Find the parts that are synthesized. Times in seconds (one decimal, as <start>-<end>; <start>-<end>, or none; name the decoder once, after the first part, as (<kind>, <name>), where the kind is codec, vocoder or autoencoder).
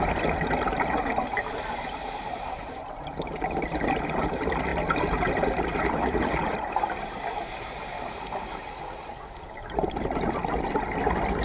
none